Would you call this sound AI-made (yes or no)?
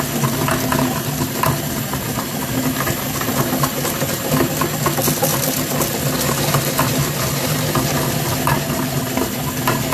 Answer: no